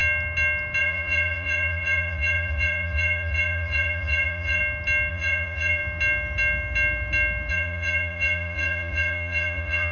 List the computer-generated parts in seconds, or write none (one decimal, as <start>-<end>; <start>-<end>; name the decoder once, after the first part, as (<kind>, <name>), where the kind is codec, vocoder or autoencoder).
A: 0.8-4.6 (vocoder, Vocos); 5.1-5.8; 7.5-9.9